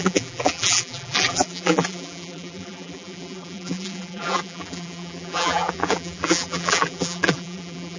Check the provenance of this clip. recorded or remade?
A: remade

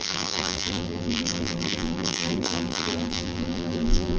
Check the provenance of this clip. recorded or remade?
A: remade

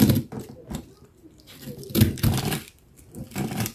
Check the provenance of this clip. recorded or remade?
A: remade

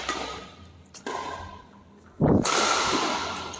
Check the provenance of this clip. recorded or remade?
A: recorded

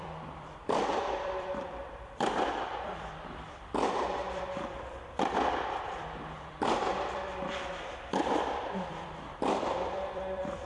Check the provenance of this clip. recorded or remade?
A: remade